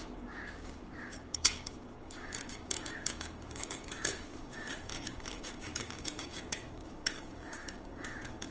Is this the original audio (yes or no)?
no